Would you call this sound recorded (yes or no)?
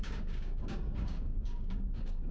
no